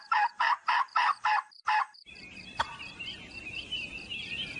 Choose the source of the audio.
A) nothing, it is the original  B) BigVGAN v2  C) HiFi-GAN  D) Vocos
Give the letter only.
B